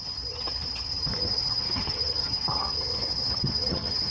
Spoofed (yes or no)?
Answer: yes